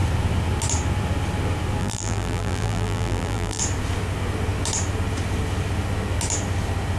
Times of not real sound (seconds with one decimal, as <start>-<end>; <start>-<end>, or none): 1.8-3.6